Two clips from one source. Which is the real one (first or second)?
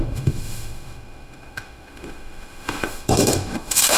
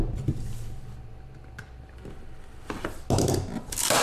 second